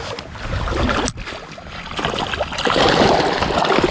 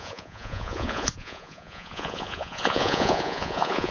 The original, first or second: first